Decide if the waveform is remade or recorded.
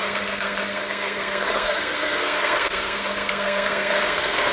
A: remade